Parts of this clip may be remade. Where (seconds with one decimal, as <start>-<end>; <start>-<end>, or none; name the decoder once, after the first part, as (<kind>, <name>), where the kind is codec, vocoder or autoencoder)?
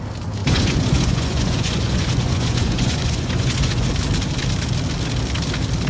0.4-3.9 (vocoder, Vocos)